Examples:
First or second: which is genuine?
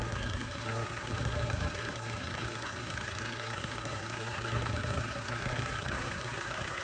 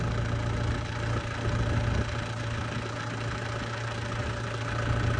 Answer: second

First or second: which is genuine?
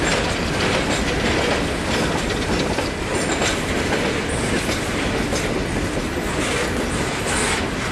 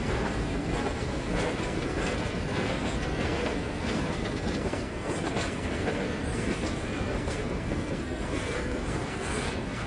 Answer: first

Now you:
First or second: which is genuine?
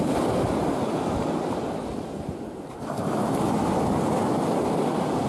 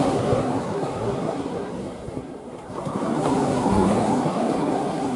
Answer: first